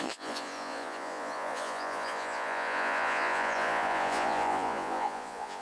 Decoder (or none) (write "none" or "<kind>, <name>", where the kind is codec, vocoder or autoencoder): vocoder, Vocos